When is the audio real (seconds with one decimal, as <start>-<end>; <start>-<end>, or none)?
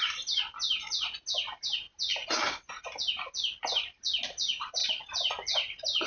0.0-6.1